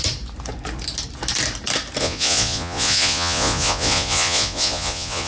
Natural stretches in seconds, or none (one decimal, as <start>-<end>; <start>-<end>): 0.0-2.0